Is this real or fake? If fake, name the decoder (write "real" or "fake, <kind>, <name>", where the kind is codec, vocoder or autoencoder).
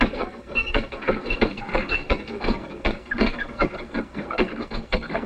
fake, codec, SNAC